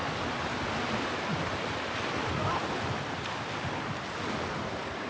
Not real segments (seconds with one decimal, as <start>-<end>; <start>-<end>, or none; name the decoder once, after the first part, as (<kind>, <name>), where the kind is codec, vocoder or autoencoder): none